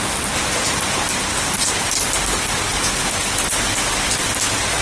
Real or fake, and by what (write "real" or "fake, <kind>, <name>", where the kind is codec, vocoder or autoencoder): real